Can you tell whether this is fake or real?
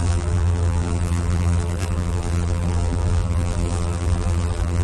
fake